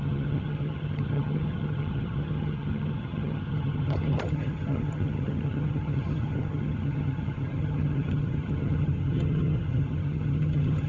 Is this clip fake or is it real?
fake